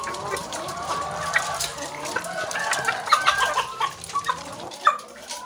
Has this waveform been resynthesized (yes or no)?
yes